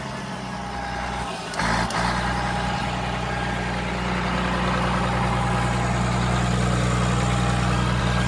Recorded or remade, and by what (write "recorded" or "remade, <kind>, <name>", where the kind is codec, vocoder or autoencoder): recorded